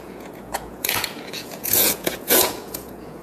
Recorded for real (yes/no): no